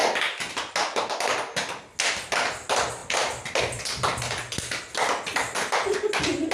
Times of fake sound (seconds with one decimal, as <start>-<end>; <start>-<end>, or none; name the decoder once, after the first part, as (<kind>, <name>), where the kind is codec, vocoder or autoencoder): none